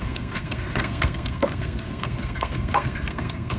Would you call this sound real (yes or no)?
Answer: no